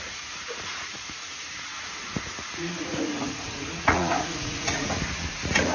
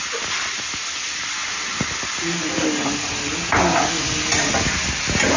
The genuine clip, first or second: second